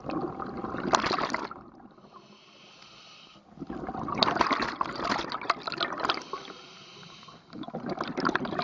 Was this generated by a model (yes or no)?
no